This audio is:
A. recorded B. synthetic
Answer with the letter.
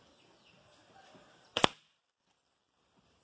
B